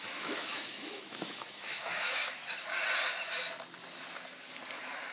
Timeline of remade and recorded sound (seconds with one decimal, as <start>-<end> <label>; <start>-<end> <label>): 0.0-2.4 remade; 2.4-5.1 recorded